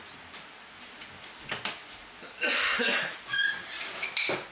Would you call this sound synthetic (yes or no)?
no